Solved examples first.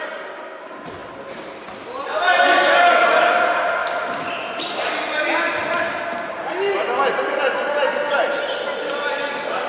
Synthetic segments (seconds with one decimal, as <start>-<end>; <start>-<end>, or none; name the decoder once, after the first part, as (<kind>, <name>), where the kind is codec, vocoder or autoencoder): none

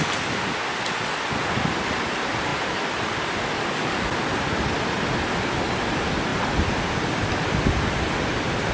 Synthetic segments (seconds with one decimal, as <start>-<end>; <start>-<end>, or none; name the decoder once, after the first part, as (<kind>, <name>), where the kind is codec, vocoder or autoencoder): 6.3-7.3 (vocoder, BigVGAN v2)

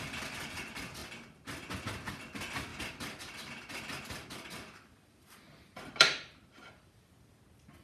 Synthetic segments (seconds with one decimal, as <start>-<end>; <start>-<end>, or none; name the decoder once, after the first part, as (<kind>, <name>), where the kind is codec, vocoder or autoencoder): 2.7-7.1 (vocoder, BigVGAN v2)